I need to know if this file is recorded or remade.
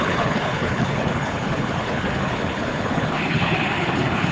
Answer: remade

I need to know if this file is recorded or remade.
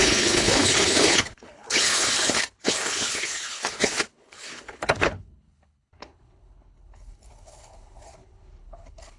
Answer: remade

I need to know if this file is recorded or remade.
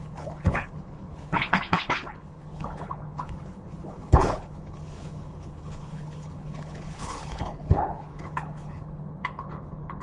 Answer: remade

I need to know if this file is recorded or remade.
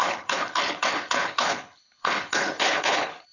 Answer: remade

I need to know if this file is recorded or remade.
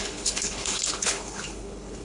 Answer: remade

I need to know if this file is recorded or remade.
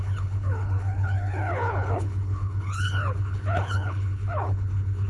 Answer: remade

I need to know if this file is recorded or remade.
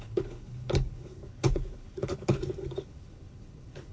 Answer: remade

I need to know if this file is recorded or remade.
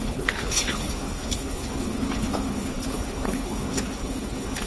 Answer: remade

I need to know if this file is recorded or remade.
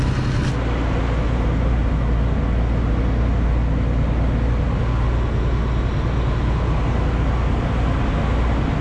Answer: recorded